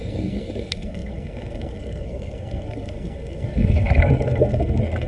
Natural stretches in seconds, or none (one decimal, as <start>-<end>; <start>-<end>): none